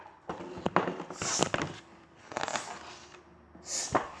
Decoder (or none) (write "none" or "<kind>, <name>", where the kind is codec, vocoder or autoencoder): none